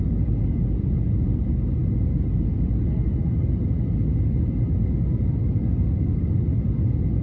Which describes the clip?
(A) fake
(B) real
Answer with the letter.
B